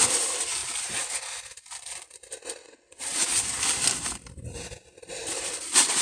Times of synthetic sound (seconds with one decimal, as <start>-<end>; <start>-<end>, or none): 2.6-3.4